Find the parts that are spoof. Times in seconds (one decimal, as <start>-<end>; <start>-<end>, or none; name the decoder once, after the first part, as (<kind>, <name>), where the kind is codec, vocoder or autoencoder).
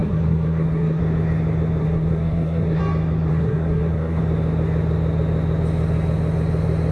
0.0-1.0 (codec, SNAC); 1.8-2.8; 3.3-4.2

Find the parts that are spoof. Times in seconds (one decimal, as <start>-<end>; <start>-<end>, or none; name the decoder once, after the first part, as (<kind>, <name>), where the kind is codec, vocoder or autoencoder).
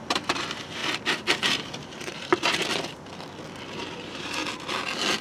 0.0-0.8 (vocoder, BigVGAN v2); 1.4-2.6; 3.8-4.4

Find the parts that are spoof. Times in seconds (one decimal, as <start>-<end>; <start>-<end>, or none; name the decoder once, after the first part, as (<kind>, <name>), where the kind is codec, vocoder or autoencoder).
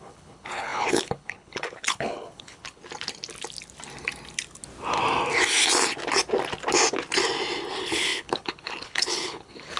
0.0-2.8 (codec, HILCodec); 7.7-9.8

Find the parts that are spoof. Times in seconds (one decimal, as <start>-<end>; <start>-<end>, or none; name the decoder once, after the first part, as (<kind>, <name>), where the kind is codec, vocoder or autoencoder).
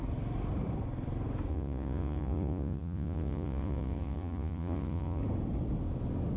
1.5-5.2 (vocoder, Vocos)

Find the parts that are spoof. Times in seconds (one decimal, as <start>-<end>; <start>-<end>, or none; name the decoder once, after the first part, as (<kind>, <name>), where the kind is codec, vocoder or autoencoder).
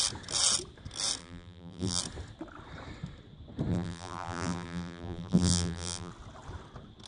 1.2-2.0 (vocoder, BigVGAN v2); 3.7-6.1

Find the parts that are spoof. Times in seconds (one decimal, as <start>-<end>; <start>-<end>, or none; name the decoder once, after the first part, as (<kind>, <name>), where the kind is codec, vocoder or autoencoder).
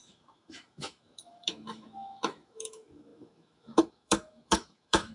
0.0-5.1 (autoencoder, DAC-VAE)